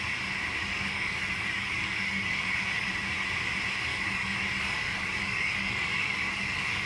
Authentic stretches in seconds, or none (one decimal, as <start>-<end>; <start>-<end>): 0.0-0.6; 2.9-3.9